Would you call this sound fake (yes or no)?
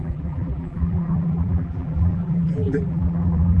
yes